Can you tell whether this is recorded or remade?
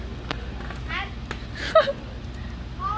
recorded